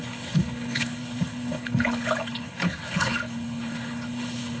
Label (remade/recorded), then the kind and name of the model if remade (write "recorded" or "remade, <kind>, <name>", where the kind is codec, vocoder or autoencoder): remade, codec, HILCodec